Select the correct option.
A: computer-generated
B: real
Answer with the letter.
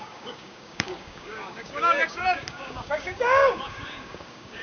A